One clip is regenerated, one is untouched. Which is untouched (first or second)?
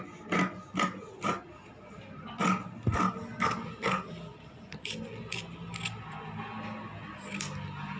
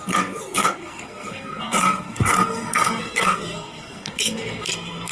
first